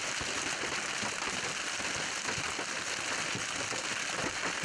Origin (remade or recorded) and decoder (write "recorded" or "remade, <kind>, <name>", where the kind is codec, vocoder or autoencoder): recorded